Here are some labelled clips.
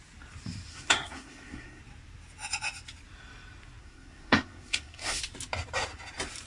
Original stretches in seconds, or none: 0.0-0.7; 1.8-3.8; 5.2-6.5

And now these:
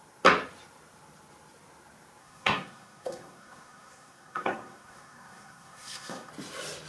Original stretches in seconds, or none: 0.0-2.2; 6.3-6.9

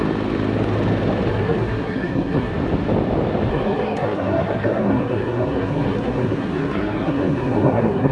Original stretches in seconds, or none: 0.0-1.3; 2.5-3.5

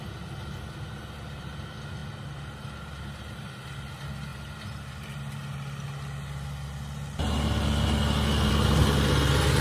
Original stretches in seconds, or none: 0.0-9.6